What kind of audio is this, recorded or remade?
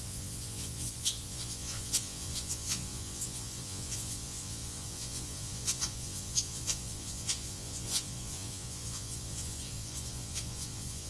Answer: remade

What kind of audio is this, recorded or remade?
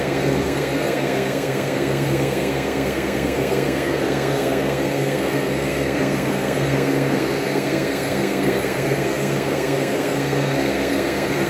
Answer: remade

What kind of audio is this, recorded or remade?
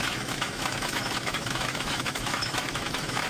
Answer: remade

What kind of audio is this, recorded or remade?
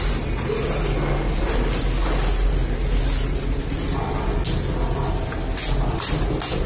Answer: recorded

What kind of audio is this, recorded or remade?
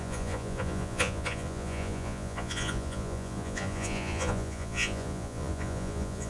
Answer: remade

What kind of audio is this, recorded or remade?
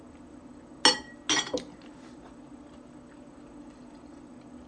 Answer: recorded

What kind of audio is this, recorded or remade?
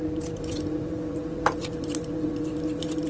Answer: remade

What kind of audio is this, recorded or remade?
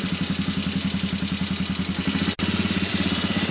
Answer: recorded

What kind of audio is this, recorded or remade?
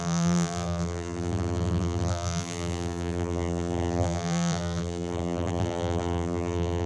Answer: remade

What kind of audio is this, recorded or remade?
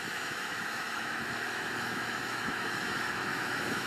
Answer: remade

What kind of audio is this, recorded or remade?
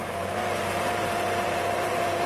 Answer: remade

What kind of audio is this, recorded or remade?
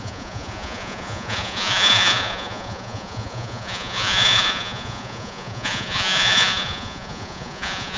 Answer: remade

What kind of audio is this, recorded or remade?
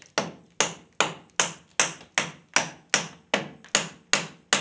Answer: recorded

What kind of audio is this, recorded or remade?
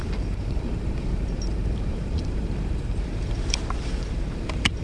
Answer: remade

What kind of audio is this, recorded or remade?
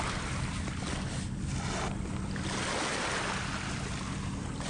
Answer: recorded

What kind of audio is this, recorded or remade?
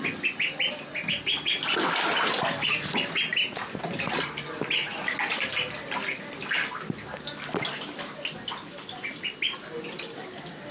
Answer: recorded